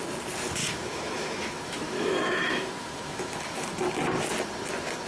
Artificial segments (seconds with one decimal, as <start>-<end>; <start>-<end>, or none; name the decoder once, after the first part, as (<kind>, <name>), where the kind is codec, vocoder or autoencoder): 0.6-3.7 (autoencoder, DAC-VAE)